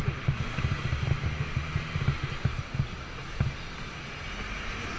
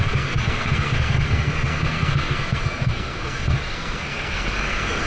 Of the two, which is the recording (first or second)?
first